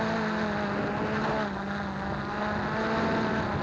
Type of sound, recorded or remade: recorded